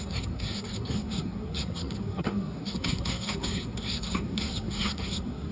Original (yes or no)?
no